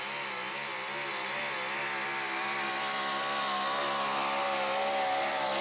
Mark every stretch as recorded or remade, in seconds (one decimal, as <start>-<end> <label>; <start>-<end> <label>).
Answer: 0.0-5.6 recorded